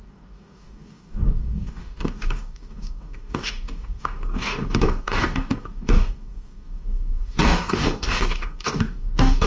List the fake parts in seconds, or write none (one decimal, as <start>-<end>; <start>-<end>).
0.0-9.5